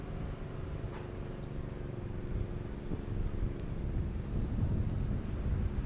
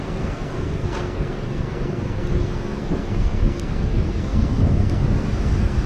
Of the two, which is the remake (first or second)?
second